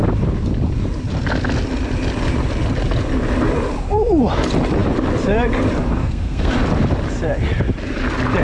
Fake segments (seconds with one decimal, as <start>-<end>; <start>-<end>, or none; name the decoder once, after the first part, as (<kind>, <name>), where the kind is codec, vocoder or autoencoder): 6.0-6.5 (codec, SNAC)